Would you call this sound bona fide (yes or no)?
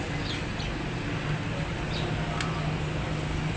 yes